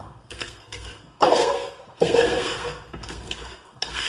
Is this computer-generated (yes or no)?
yes